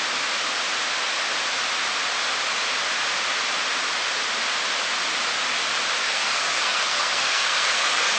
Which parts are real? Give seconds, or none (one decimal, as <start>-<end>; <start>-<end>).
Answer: 0.0-6.0